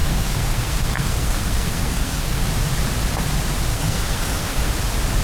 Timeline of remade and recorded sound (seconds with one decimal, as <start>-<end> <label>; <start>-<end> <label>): 0.0-2.5 remade; 2.5-3.7 recorded; 3.7-4.7 remade; 4.7-5.2 recorded